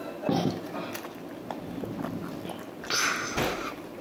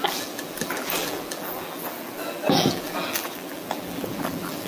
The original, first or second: first